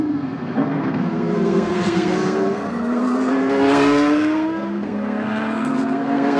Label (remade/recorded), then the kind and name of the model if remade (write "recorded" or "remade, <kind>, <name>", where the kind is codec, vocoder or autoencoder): remade, codec, SNAC